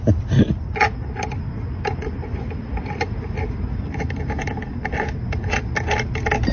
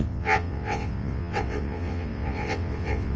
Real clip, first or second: first